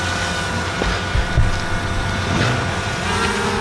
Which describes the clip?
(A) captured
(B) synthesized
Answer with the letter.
A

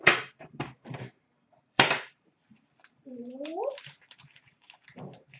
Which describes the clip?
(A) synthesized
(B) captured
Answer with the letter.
A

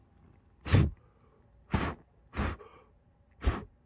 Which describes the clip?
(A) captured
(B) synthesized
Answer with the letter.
A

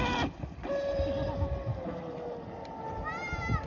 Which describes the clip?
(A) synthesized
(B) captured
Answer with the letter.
B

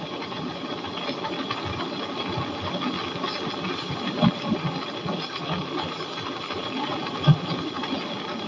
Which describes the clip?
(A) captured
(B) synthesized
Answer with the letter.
A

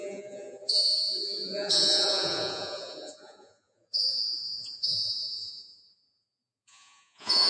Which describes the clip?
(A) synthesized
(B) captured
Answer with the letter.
A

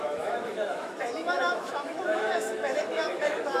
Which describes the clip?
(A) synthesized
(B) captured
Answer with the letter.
A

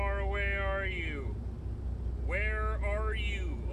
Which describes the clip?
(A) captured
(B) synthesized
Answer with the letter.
A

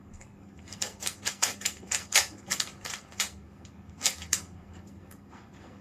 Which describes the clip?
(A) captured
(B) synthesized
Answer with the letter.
B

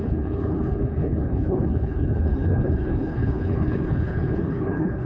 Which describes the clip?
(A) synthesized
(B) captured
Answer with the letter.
A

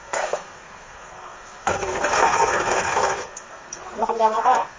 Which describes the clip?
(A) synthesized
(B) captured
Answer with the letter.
A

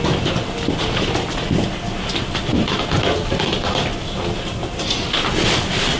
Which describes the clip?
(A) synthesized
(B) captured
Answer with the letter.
B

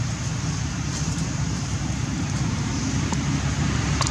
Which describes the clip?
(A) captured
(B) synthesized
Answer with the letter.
B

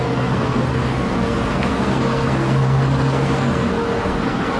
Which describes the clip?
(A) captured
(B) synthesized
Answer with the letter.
B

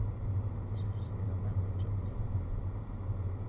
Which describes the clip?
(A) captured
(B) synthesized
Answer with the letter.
A